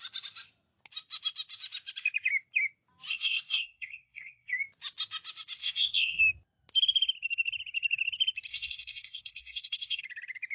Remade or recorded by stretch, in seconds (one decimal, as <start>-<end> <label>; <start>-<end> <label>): 0.0-3.1 recorded; 3.1-4.5 remade; 4.5-5.6 recorded; 5.6-6.2 remade; 6.2-8.5 recorded; 8.5-10.0 remade; 10.0-10.5 recorded